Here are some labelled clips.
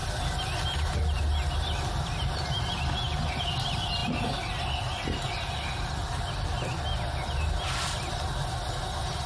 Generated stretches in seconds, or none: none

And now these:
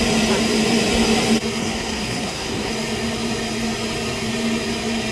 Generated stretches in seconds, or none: 1.6-2.7

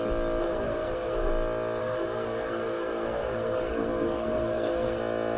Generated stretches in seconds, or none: 0.4-1.3; 1.8-5.0

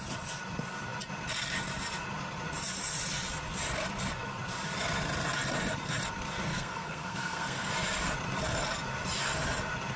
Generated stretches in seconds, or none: 6.5-7.7